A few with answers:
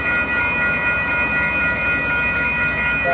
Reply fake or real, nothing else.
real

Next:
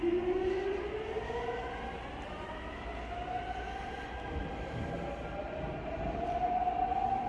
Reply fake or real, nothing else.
real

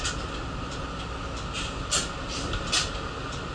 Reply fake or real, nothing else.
real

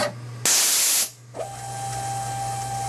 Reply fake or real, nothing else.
real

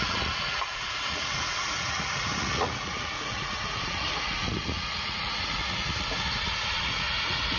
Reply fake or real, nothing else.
fake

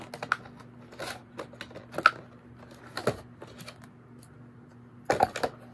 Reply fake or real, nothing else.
real